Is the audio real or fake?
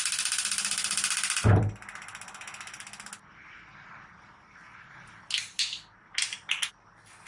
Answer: real